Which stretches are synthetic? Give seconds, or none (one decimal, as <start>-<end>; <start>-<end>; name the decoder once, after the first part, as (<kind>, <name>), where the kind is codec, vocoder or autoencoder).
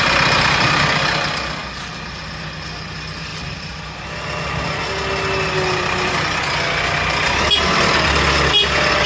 none